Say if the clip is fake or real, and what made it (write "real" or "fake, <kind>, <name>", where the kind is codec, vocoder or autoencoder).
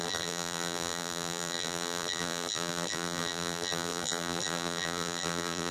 fake, vocoder, BigVGAN v2